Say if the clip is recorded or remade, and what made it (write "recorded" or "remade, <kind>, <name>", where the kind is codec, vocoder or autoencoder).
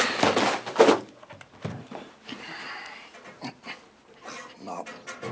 recorded